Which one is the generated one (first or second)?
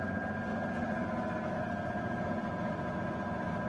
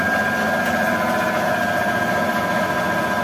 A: first